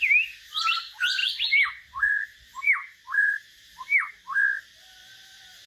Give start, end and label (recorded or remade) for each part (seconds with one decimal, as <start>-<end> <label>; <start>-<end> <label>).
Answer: 0.0-1.2 recorded; 1.2-4.1 remade; 4.1-5.7 recorded